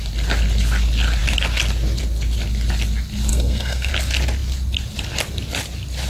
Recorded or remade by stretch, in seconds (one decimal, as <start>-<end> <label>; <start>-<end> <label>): 0.0-3.3 recorded; 3.3-3.9 remade; 3.9-6.1 recorded